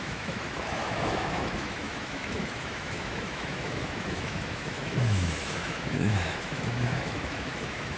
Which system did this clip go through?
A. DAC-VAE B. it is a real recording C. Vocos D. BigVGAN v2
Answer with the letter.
A